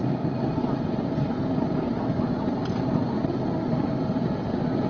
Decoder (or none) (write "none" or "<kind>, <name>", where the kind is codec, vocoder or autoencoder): none